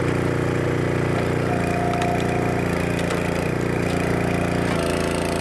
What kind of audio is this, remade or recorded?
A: recorded